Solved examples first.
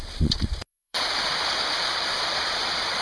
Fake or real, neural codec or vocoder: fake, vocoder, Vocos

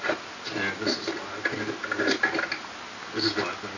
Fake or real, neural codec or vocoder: real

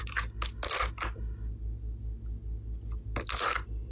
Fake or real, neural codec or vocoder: real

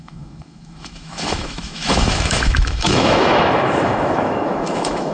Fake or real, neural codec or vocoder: fake, autoencoder, DAC-VAE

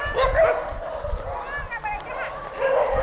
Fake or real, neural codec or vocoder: real